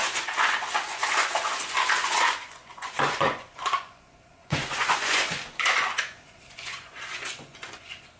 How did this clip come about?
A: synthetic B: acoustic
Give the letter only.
A